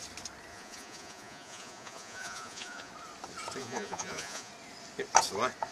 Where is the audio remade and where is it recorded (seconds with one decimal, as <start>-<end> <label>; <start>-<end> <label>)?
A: 0.0-0.5 recorded; 0.5-2.9 remade; 2.9-3.6 recorded; 3.6-4.5 remade; 4.5-5.7 recorded